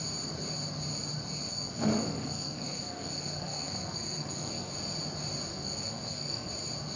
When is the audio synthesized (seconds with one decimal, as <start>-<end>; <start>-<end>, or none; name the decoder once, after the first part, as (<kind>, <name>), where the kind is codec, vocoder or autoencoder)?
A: 1.5-4.7 (codec, SNAC); 5.5-6.5